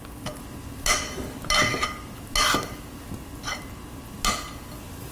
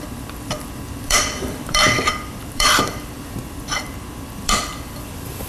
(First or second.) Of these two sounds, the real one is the first